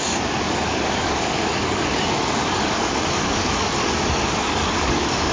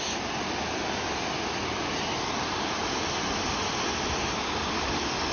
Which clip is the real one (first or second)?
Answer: second